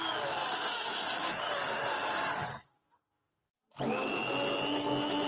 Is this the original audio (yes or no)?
yes